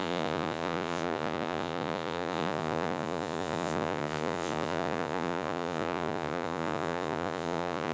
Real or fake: fake